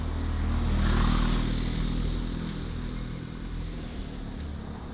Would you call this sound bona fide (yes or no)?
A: yes